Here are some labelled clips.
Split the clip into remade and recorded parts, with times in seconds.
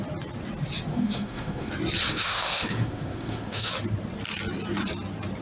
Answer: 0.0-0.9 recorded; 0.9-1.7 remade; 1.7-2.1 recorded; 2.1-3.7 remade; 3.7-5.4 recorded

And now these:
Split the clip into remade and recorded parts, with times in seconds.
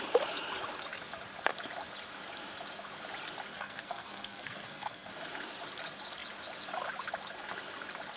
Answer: 0.0-3.5 recorded; 3.5-5.1 remade; 5.1-8.2 recorded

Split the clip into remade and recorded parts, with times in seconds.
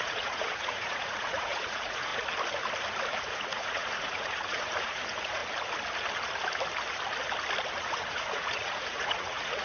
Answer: 0.0-2.1 remade; 2.1-3.2 recorded; 3.2-5.4 remade; 5.4-7.8 recorded; 7.8-9.6 remade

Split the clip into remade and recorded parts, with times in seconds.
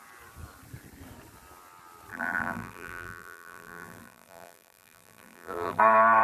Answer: 0.0-2.1 recorded; 2.1-5.8 remade; 5.8-6.2 recorded